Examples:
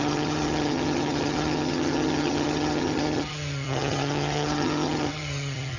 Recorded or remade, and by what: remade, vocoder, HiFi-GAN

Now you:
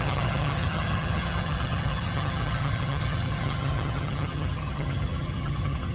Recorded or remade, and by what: remade, vocoder, HiFi-GAN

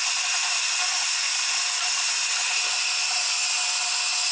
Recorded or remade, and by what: recorded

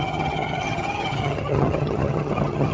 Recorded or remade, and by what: remade, vocoder, HiFi-GAN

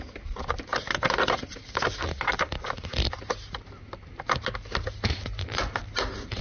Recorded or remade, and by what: recorded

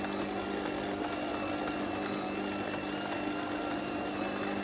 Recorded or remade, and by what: recorded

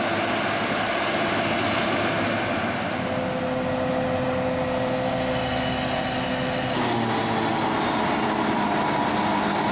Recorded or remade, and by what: recorded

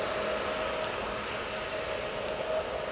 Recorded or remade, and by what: recorded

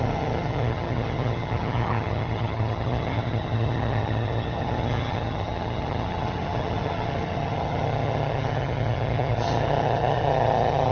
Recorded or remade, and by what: remade, vocoder, HiFi-GAN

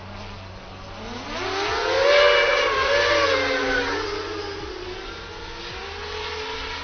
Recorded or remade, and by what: recorded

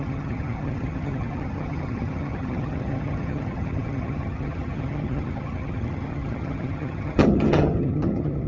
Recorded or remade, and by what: remade, vocoder, HiFi-GAN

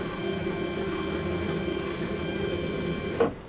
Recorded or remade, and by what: recorded